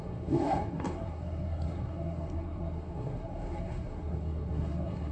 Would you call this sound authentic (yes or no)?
no